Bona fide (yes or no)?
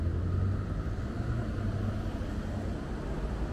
yes